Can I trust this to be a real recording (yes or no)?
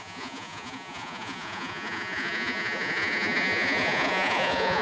no